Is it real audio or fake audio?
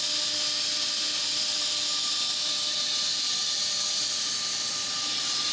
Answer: real